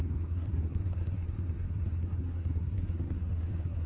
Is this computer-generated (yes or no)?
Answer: yes